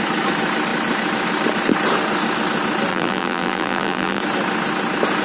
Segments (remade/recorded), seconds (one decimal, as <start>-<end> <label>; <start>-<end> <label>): 0.0-2.9 recorded; 2.9-4.2 remade; 4.2-5.2 recorded